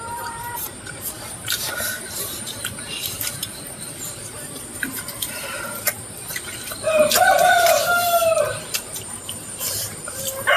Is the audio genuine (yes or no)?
no